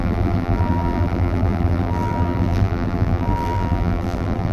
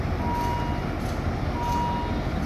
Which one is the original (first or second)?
second